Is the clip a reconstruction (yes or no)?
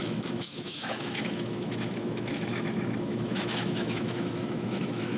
yes